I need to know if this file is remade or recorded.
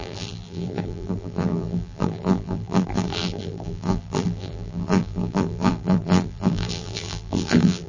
remade